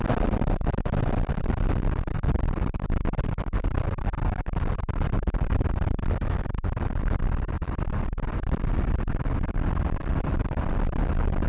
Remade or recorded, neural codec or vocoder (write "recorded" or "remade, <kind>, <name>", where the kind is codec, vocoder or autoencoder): recorded